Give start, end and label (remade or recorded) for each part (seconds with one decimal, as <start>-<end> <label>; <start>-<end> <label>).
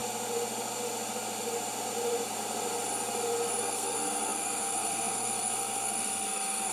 0.0-3.6 recorded; 3.6-6.7 remade